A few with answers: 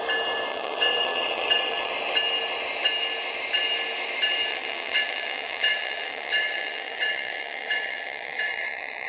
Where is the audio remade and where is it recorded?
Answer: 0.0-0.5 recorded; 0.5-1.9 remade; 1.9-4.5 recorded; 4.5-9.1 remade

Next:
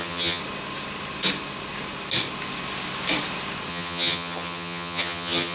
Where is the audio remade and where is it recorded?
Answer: 0.0-0.4 remade; 0.4-3.7 recorded; 3.7-5.5 remade

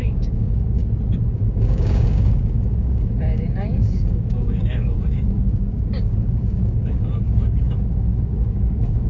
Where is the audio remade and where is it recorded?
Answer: 0.0-0.8 remade; 0.8-1.3 recorded; 1.3-9.1 remade

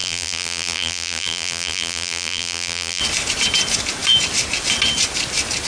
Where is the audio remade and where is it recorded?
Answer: 0.0-3.0 remade; 3.0-5.7 recorded

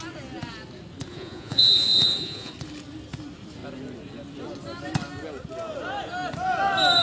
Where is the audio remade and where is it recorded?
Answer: 0.0-1.1 recorded; 1.1-2.5 remade; 2.5-7.0 recorded

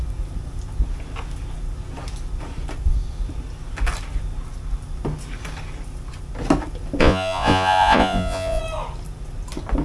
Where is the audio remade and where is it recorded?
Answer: 0.0-7.0 recorded; 7.0-8.6 remade; 8.6-9.8 recorded

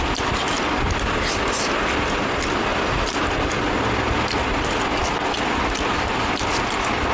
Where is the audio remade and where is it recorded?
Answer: 0.0-2.7 recorded; 2.7-3.6 remade; 3.6-7.1 recorded